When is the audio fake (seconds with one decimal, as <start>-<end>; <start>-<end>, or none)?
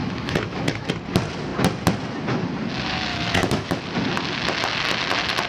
0.0-0.9; 3.1-3.8